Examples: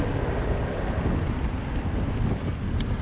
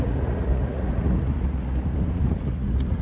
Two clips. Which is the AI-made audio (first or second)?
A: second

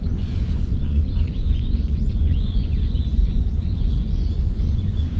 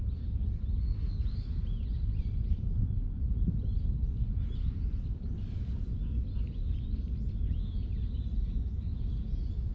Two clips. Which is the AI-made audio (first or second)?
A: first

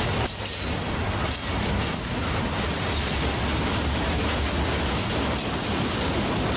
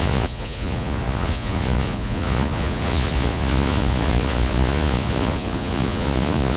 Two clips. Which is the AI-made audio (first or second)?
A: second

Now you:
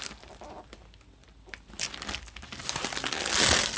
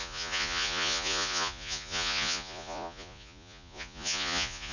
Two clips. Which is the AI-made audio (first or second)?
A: second